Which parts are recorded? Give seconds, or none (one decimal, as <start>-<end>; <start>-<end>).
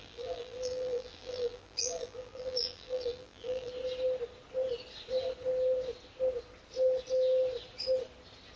3.7-8.6